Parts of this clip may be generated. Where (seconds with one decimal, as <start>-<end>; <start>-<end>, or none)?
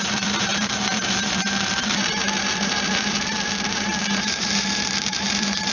0.0-5.7